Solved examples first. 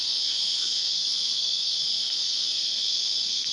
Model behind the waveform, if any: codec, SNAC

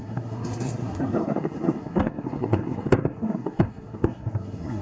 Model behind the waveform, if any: codec, SNAC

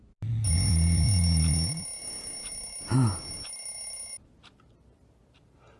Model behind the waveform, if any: none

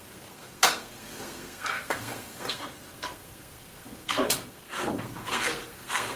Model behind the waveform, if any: codec, SNAC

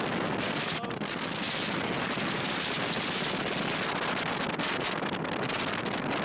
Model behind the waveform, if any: none